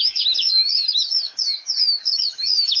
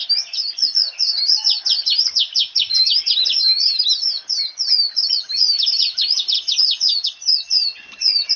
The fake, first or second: first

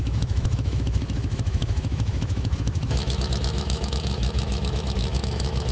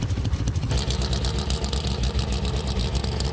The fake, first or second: first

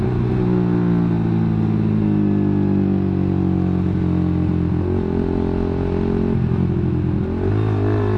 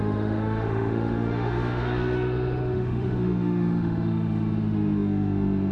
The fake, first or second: second